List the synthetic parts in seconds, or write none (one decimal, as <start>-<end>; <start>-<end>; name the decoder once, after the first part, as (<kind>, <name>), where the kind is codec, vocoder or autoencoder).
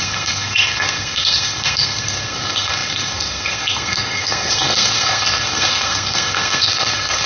0.0-7.3 (codec, SNAC)